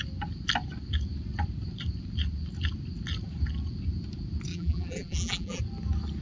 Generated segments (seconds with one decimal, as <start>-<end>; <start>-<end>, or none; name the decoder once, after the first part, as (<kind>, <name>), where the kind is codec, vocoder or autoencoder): 4.5-5.6 (vocoder, BigVGAN v2)